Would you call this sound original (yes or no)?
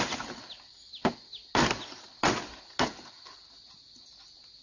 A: yes